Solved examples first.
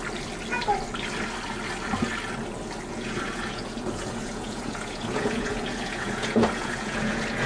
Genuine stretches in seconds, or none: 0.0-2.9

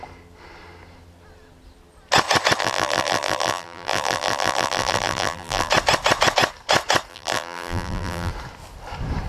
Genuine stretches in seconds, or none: 0.0-2.6; 5.7-7.1; 8.3-9.3